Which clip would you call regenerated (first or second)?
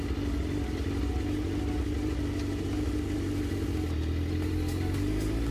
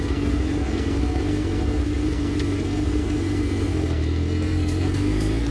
second